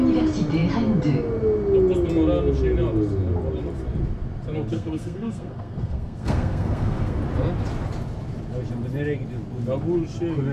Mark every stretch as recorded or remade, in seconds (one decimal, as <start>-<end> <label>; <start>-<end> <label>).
0.0-4.7 recorded; 4.7-7.2 remade; 7.2-10.5 recorded